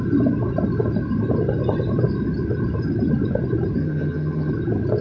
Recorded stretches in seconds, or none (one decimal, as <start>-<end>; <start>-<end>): 0.0-3.8; 4.5-5.0